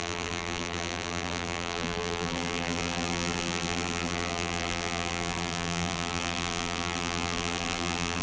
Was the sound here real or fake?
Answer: fake